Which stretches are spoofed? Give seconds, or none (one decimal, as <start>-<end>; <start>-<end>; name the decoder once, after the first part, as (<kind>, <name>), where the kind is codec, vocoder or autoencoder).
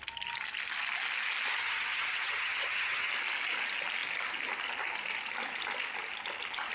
1.6-3.1 (vocoder, HiFi-GAN)